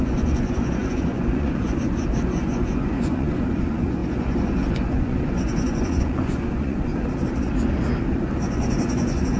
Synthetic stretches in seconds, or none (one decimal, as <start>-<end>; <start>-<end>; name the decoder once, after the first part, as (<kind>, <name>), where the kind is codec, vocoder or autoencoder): 0.0-6.9 (vocoder, Vocos); 8.4-9.4